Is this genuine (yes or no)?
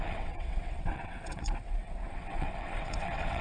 no